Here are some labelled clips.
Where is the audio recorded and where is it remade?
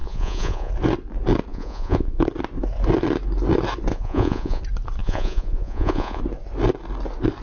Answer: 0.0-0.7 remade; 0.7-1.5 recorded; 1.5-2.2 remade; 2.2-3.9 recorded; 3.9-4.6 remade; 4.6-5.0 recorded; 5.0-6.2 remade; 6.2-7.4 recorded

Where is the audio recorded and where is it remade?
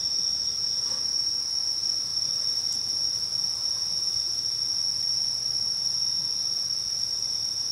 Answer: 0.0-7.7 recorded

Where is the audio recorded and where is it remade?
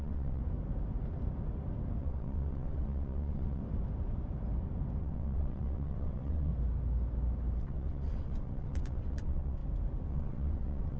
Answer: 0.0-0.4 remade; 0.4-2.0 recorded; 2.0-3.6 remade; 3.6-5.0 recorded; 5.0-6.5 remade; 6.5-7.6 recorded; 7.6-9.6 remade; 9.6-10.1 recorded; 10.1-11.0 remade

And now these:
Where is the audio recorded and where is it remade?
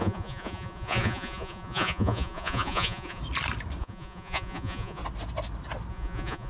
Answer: 0.0-3.2 remade; 3.2-3.8 recorded; 3.8-5.0 remade; 5.0-5.9 recorded; 5.9-6.5 remade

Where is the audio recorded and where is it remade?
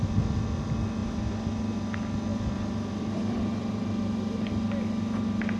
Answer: 0.0-1.0 recorded; 1.0-1.7 remade; 1.7-2.3 recorded; 2.3-4.5 remade; 4.5-5.6 recorded